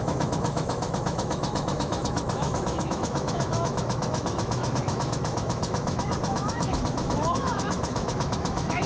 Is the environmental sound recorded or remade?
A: remade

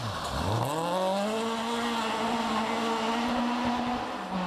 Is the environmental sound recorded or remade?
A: recorded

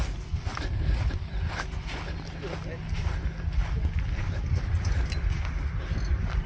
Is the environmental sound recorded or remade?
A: recorded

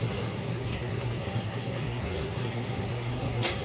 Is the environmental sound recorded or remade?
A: remade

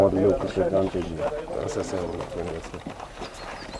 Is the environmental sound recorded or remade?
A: remade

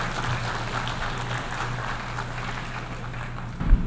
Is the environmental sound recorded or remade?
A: recorded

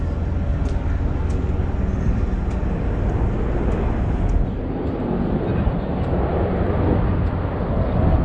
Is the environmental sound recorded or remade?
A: recorded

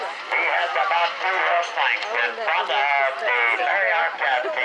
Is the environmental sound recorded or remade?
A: recorded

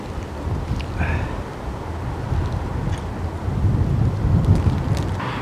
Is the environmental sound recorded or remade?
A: recorded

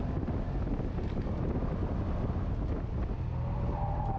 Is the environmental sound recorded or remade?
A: recorded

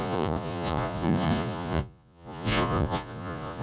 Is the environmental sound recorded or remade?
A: remade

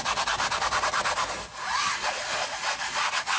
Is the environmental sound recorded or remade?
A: recorded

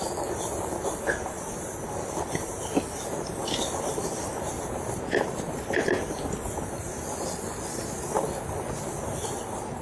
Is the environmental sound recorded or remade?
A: recorded